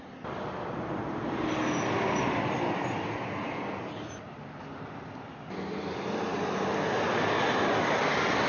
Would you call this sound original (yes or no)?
yes